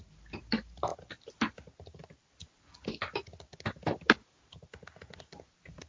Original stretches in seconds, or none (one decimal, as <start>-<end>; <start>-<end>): 0.0-5.9